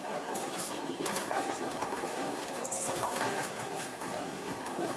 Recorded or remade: remade